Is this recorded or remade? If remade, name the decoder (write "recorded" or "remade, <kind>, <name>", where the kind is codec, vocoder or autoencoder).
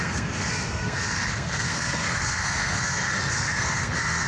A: remade, codec, SNAC